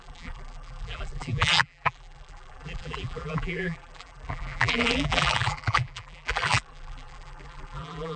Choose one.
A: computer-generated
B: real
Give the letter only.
A